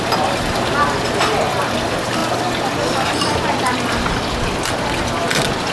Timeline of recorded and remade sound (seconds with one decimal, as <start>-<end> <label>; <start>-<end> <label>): 0.0-5.7 recorded